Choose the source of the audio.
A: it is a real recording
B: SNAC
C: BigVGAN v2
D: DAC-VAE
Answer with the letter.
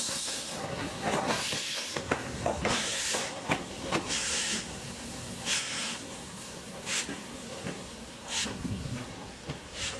B